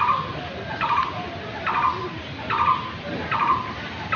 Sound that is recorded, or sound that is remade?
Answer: recorded